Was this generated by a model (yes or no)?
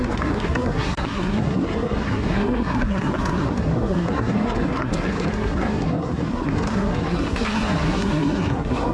yes